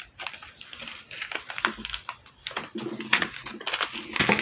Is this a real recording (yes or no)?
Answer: yes